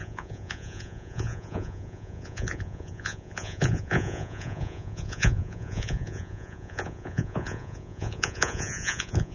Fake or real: fake